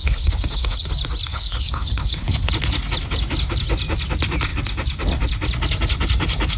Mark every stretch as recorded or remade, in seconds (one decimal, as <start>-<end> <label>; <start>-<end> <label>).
0.0-0.9 remade; 0.9-1.3 recorded; 1.3-2.5 remade; 2.5-6.6 recorded